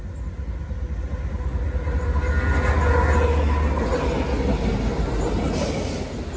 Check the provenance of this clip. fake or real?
real